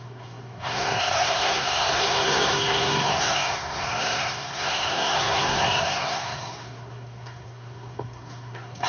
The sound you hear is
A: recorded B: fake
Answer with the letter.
B